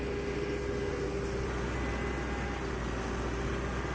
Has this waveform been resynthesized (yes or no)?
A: no